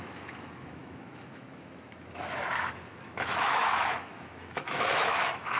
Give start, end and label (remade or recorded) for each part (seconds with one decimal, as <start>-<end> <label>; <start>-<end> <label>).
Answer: 0.0-5.6 remade